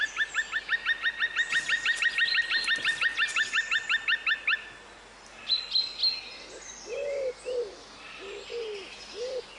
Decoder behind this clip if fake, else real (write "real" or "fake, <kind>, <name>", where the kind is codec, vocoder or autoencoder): real